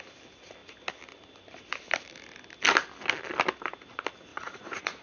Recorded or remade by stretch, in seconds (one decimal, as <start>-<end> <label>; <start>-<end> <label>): 0.0-4.3 recorded; 4.3-5.0 remade